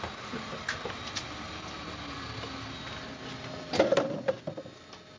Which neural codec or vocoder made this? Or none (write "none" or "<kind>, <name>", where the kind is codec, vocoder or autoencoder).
none